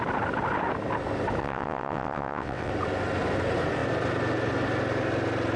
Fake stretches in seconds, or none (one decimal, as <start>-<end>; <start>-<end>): 1.4-2.7